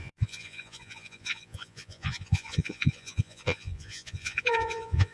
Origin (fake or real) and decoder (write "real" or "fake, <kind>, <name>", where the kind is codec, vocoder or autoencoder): fake, vocoder, Vocos